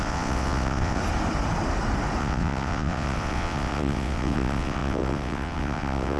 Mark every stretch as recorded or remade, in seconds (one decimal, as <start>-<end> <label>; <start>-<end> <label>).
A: 0.0-1.0 remade; 1.0-2.2 recorded; 2.2-6.2 remade